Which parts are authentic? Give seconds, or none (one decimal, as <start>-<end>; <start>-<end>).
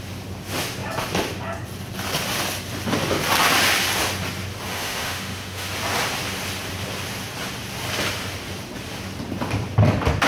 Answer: 0.0-4.7; 5.7-10.3